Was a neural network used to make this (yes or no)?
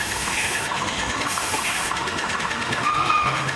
yes